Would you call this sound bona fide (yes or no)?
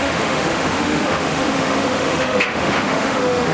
no